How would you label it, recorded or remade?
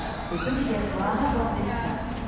recorded